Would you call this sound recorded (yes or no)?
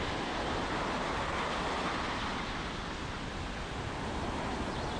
yes